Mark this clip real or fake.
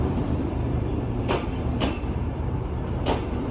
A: fake